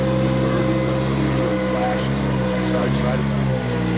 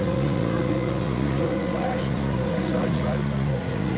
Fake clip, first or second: second